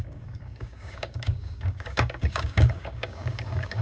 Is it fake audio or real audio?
fake